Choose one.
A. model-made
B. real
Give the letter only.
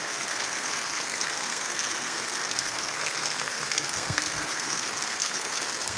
A